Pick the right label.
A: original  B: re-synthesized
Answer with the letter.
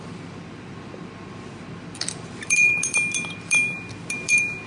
B